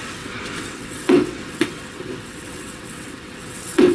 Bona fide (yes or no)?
no